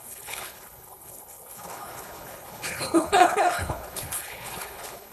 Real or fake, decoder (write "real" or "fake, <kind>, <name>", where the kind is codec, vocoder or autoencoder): fake, codec, HILCodec